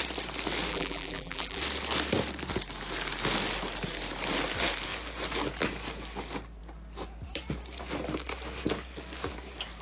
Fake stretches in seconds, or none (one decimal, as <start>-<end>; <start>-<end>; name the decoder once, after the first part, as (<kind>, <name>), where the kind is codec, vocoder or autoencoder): 0.7-1.6 (vocoder, BigVGAN v2)